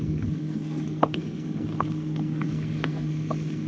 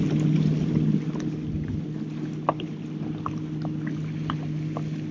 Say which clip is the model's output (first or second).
first